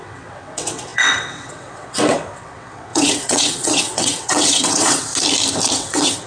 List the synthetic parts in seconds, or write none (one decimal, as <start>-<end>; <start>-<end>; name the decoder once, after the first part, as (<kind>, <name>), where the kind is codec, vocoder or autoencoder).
0.0-5.1 (vocoder, WaveNeXt); 5.7-6.3